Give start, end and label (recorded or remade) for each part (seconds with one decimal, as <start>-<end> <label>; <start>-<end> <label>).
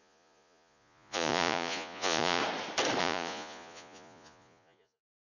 0.0-2.4 remade; 2.4-3.0 recorded; 3.0-5.3 remade